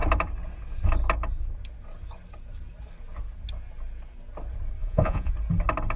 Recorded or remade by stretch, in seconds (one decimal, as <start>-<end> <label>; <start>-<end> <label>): 0.0-4.8 recorded; 4.8-5.3 remade; 5.3-6.0 recorded